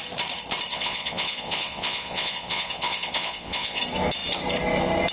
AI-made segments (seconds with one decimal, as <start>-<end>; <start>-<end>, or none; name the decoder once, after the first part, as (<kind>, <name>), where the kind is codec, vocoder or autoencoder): 0.7-3.8 (vocoder, Vocos)